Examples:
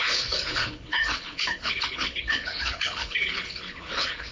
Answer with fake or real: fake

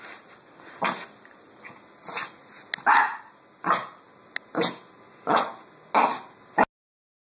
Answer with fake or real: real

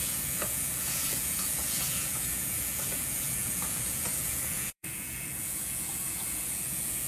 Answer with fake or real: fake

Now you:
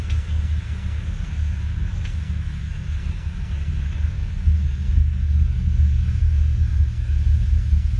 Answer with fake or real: fake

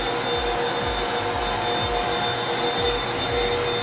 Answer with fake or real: real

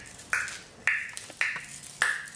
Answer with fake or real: real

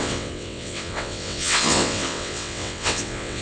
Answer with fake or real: fake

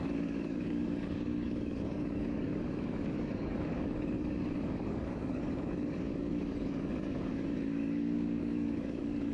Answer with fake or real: fake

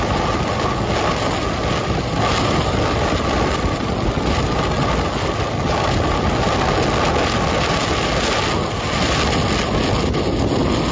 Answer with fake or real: real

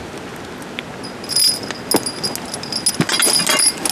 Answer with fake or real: real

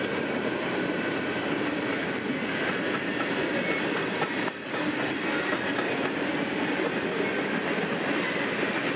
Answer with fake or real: real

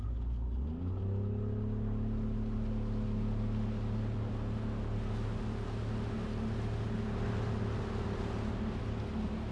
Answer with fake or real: real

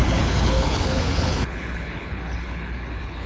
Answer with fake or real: fake